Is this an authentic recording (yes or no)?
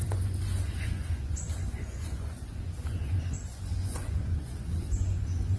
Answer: no